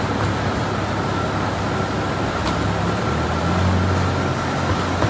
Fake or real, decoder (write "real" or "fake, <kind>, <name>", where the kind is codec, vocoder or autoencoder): real